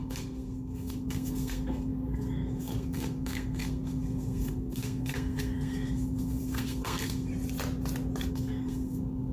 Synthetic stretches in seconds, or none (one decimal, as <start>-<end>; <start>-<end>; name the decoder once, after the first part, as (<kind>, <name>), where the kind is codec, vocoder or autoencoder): 0.0-7.3 (codec, SNAC); 8.3-9.3